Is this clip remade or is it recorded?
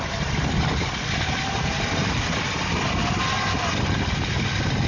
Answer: recorded